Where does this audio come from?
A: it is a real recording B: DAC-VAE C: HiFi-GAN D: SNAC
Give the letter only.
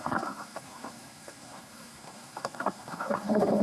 D